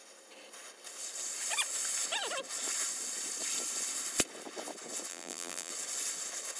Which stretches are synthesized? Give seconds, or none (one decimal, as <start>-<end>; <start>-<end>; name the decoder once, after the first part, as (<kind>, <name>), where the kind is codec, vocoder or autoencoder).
5.1-5.7 (vocoder, BigVGAN v2)